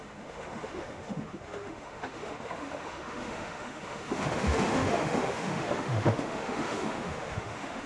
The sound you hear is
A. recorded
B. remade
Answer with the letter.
B